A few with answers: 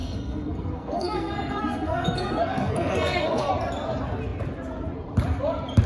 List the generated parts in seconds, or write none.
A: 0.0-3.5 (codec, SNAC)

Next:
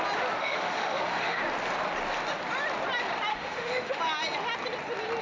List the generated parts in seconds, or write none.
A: 0.4-1.4 (autoencoder, DAC-VAE); 3.3-4.0

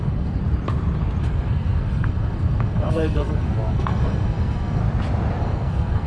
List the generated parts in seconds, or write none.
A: 0.0-0.4 (codec, SNAC); 1.2-4.8; 5.4-6.1

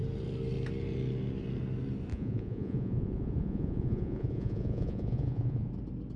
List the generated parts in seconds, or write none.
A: 2.1-5.7 (vocoder, Vocos)

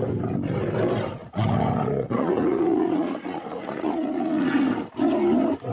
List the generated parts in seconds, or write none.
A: 1.2-4.6 (vocoder, Vocos)